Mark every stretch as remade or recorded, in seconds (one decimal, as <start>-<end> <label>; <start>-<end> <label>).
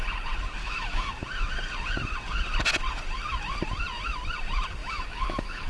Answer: 0.0-0.6 recorded; 0.6-1.1 remade; 1.1-4.8 recorded; 4.8-5.7 remade